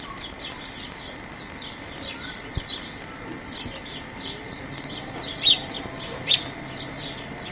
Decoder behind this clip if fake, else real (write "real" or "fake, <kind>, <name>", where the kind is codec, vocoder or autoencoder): real